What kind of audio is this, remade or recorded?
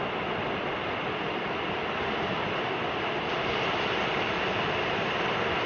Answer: recorded